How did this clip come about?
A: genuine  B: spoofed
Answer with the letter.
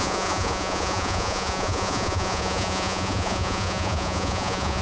B